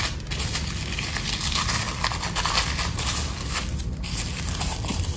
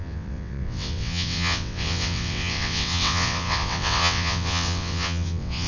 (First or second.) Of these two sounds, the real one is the first